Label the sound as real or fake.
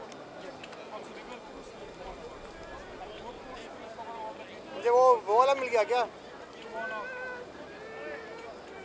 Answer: real